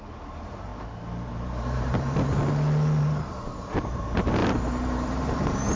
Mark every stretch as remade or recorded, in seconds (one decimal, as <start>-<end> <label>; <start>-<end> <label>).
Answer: 0.0-0.7 remade; 0.7-1.3 recorded; 1.3-2.4 remade; 2.4-3.0 recorded; 3.0-5.8 remade